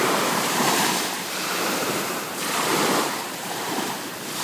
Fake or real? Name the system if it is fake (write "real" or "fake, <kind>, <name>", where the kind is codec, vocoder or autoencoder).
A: fake, vocoder, BigVGAN v2